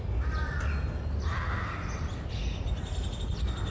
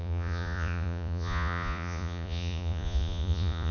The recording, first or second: first